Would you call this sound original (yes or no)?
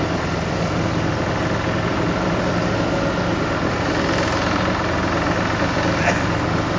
yes